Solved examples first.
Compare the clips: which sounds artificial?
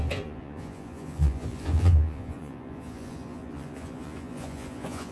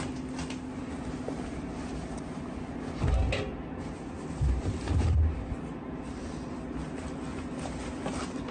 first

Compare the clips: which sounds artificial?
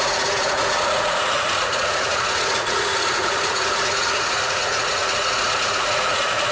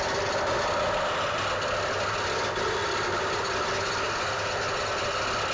first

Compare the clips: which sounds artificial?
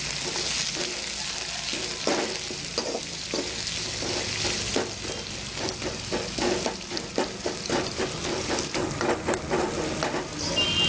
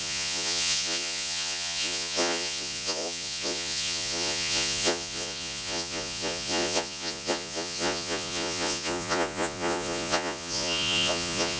second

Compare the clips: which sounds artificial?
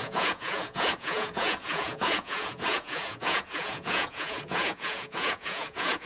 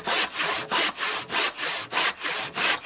first